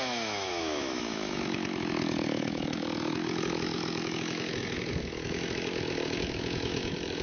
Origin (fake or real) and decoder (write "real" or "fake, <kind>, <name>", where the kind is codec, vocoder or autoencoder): fake, autoencoder, DAC-VAE